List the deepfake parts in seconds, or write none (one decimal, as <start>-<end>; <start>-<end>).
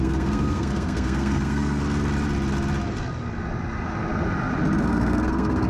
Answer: 0.0-1.8; 4.8-5.7